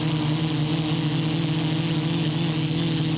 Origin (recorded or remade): recorded